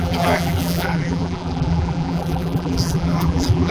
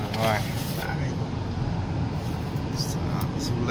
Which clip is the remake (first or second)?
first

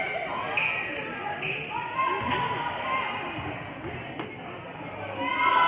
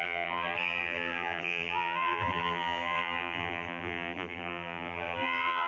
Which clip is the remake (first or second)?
second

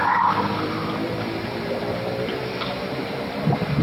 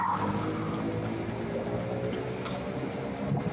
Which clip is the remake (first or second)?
first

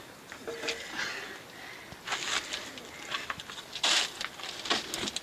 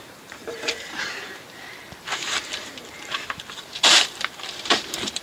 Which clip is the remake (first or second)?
second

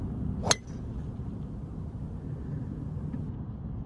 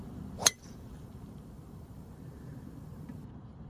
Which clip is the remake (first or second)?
second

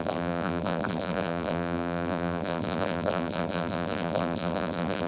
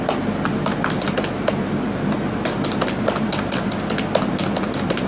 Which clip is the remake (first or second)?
first